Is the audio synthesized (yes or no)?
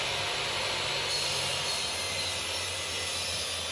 no